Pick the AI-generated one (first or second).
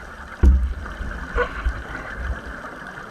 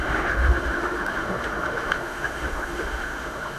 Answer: second